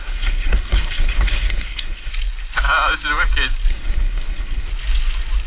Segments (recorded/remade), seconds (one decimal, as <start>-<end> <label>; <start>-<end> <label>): 0.0-2.1 remade; 2.1-3.7 recorded; 3.7-4.7 remade; 4.7-5.5 recorded